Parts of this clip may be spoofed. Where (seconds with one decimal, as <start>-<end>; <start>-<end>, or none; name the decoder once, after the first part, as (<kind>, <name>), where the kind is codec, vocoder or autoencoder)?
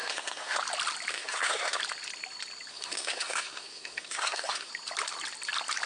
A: 0.0-0.6 (codec, SNAC); 1.1-1.8; 2.7-4.7